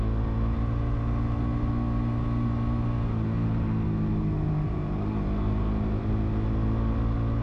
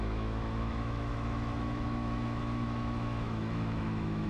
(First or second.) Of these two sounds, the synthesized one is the second